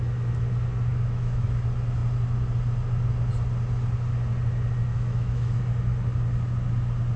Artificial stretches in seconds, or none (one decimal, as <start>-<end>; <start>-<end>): 0.9-1.6; 4.9-5.6